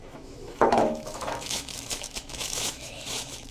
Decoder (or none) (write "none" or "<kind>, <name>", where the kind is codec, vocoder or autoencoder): autoencoder, DAC-VAE